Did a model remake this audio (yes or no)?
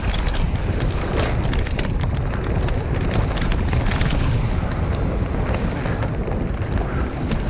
no